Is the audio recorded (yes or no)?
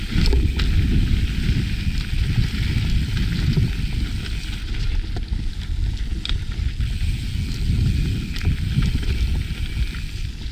yes